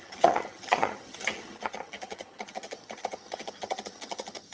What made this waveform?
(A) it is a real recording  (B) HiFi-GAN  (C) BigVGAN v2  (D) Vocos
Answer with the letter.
B